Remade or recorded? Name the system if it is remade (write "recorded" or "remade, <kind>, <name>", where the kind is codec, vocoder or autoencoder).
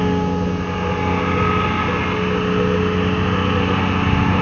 recorded